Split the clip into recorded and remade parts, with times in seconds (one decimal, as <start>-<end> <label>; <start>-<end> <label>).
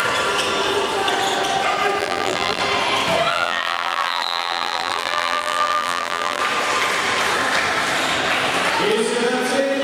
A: 0.0-2.0 recorded; 2.0-2.6 remade; 2.6-3.3 recorded; 3.3-6.4 remade; 6.4-9.8 recorded